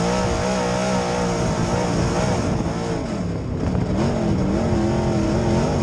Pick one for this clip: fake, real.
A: real